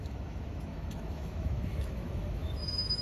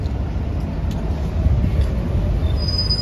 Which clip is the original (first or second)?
second